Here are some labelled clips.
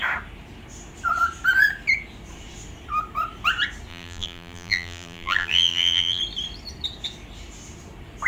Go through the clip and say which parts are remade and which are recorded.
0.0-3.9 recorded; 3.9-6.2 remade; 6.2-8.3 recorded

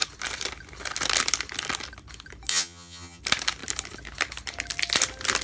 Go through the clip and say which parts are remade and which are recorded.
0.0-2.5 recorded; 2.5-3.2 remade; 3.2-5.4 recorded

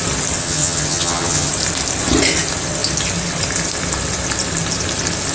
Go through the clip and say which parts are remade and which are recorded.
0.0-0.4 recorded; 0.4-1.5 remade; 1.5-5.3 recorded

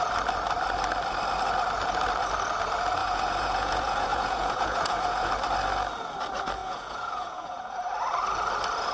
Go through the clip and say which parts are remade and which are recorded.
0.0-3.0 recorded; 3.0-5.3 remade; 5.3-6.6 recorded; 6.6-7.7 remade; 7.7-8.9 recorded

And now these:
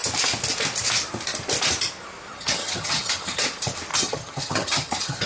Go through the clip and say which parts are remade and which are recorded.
0.0-2.3 recorded; 2.3-3.4 remade; 3.4-3.9 recorded; 3.9-5.3 remade

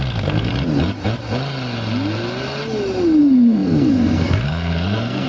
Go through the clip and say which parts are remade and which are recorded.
0.0-0.5 remade; 0.5-3.2 recorded; 3.2-5.3 remade